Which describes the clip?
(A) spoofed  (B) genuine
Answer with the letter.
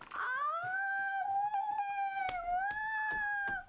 B